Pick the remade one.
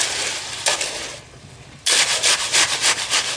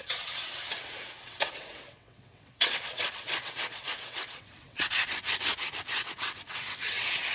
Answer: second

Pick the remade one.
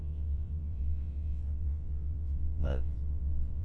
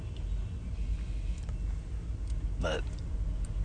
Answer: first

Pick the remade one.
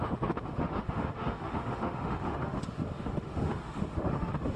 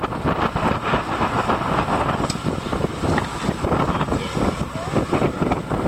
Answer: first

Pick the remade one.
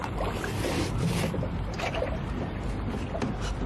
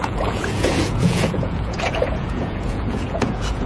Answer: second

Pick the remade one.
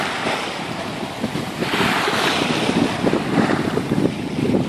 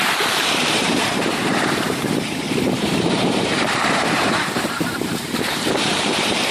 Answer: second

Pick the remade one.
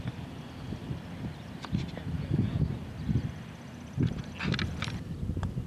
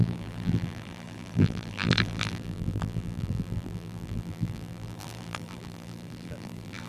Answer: second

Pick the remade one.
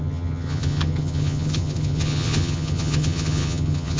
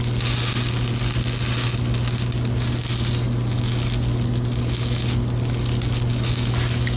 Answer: first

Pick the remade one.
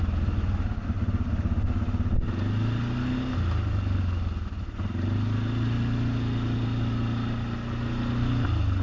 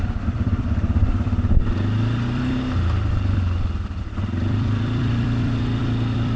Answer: second